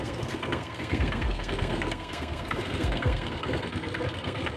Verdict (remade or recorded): remade